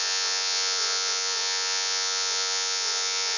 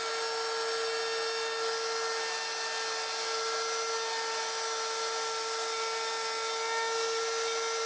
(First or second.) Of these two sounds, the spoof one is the first